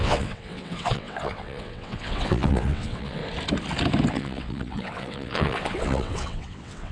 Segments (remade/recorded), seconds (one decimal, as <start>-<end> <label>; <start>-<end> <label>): 0.0-3.2 remade; 3.2-4.1 recorded; 4.1-6.9 remade

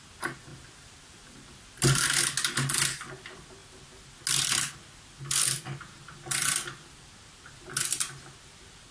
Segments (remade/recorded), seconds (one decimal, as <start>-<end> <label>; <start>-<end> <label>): 0.0-8.9 recorded

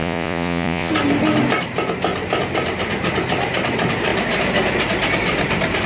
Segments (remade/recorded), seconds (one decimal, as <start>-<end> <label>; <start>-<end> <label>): 0.0-0.9 remade; 0.9-5.9 recorded

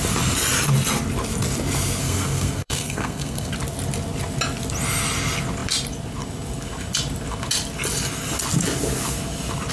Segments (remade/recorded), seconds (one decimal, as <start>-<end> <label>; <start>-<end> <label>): 0.0-2.0 recorded; 2.0-3.5 remade; 3.5-9.7 recorded